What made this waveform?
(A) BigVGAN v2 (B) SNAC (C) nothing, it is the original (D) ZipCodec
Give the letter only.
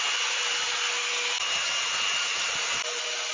C